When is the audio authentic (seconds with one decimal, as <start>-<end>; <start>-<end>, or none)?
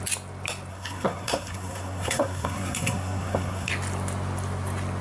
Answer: 0.0-0.7; 3.7-5.0